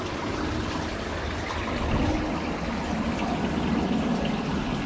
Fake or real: real